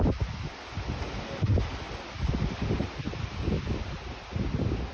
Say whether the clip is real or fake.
real